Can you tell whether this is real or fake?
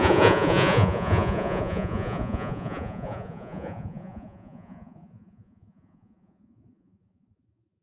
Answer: fake